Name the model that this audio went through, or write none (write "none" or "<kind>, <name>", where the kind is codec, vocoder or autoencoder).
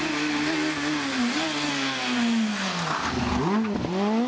none